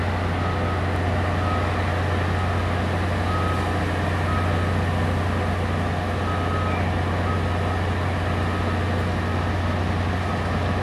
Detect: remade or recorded recorded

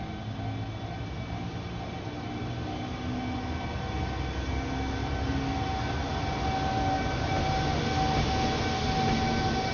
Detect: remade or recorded recorded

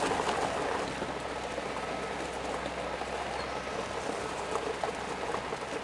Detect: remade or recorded recorded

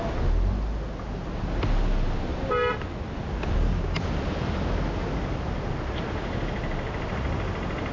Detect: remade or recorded recorded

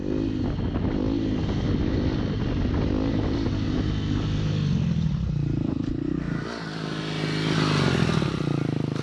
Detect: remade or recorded recorded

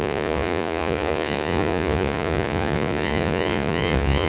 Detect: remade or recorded remade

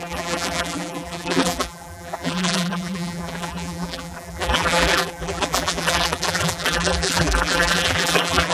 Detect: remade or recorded remade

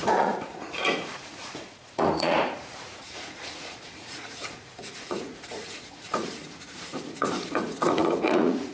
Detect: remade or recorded remade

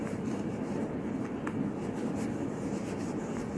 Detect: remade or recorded recorded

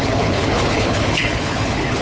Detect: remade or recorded remade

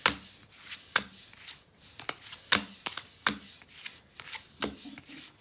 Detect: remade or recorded recorded